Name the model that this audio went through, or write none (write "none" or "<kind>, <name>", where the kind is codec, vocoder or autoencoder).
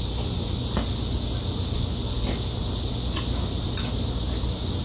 none